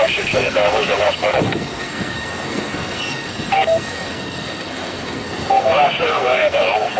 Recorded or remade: remade